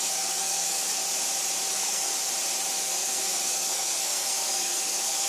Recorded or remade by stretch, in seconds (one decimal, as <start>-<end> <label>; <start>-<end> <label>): 0.0-1.0 remade; 1.0-1.7 recorded; 1.7-2.1 remade; 2.1-2.7 recorded; 2.7-5.3 remade